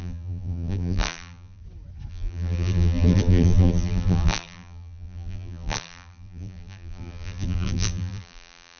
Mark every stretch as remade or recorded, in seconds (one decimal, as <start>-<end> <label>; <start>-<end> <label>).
0.0-1.6 remade; 1.6-2.1 recorded; 2.1-8.8 remade